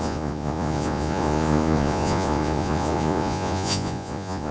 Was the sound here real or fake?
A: fake